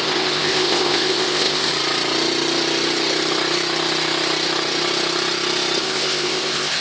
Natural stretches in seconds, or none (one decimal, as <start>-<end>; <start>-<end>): 1.7-5.8